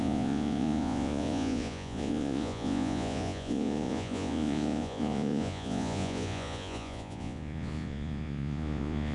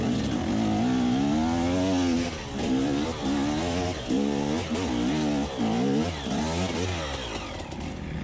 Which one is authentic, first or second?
second